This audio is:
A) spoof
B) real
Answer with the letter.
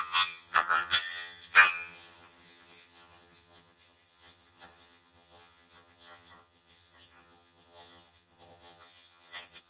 A